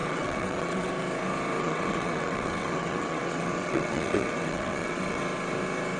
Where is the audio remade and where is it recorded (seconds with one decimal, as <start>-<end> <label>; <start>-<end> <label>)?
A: 0.0-0.9 remade; 0.9-1.6 recorded; 1.6-5.2 remade; 5.2-6.0 recorded